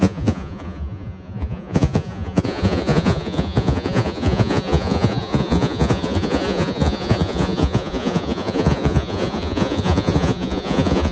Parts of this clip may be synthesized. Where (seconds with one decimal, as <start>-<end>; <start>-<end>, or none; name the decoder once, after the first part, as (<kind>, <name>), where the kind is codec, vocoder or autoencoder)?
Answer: 0.0-11.1 (vocoder, Vocos)